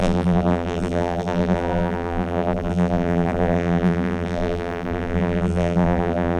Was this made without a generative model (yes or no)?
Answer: no